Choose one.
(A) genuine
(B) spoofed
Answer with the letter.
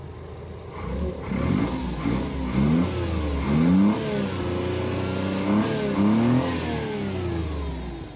A